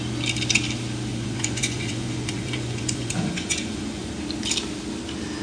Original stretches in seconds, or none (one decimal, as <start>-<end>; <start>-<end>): 0.0-1.1; 4.1-5.4